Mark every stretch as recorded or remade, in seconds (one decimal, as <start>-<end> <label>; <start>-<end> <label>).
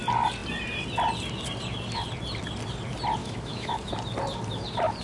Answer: 0.0-3.2 recorded; 3.2-3.9 remade; 3.9-5.0 recorded